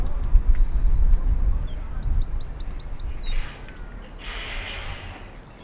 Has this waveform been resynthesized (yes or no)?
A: no